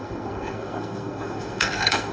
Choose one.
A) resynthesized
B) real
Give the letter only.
A